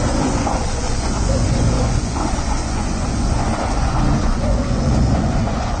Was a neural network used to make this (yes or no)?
yes